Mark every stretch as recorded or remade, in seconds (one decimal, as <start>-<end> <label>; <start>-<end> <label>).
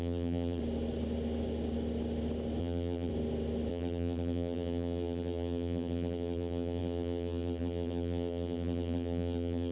0.0-0.6 remade; 0.6-2.6 recorded; 2.6-3.1 remade; 3.1-3.7 recorded; 3.7-9.7 remade